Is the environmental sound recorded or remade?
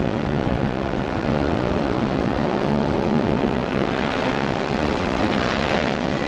remade